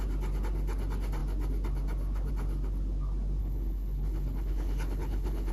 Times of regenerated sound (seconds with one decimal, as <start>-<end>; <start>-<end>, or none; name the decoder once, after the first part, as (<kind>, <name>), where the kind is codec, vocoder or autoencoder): 3.4-5.5 (codec, HILCodec)